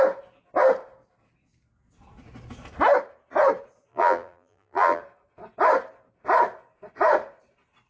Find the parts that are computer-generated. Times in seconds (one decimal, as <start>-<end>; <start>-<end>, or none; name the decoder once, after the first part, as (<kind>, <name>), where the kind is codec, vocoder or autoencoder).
3.9-5.0 (vocoder, BigVGAN v2)